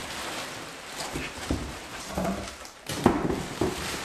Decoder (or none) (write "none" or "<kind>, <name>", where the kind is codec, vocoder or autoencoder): vocoder, BigVGAN v2